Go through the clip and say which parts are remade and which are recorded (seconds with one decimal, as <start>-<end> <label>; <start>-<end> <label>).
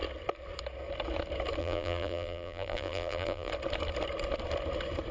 0.0-1.6 recorded; 1.6-3.5 remade; 3.5-5.1 recorded